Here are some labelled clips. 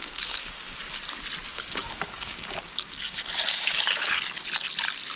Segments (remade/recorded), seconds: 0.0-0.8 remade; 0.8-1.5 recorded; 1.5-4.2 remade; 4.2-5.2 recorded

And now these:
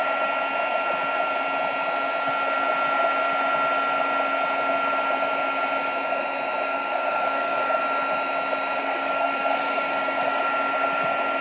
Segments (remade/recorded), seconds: 0.0-6.7 recorded; 6.7-7.8 remade; 7.8-8.8 recorded; 8.8-10.4 remade; 10.4-11.4 recorded

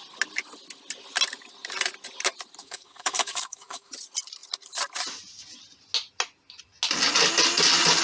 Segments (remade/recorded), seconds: 0.0-2.6 recorded; 2.6-3.9 remade; 3.9-8.0 recorded

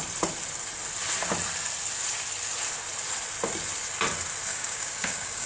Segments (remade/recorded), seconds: 0.0-4.5 recorded; 4.5-5.5 remade

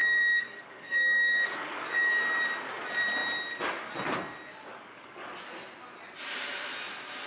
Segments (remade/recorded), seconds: 0.0-2.2 remade; 2.2-4.7 recorded; 4.7-5.3 remade; 5.3-7.3 recorded

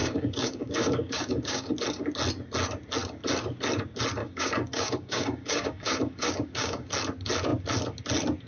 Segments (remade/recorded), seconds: 0.0-1.7 remade; 1.7-4.2 recorded; 4.2-6.9 remade; 6.9-8.5 recorded

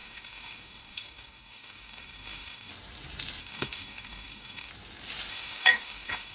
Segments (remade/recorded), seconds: 0.0-2.7 remade; 2.7-3.4 recorded; 3.4-4.7 remade; 4.7-5.3 recorded; 5.3-6.3 remade

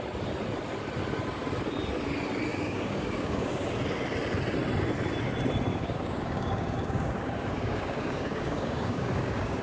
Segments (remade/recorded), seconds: 0.0-2.5 recorded; 2.5-3.7 remade; 3.7-5.7 recorded; 5.7-9.6 remade